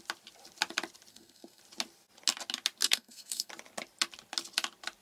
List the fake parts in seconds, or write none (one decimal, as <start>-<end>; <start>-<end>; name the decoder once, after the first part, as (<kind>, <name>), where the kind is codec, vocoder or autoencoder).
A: 1.1-1.6 (codec, SNAC); 2.8-3.5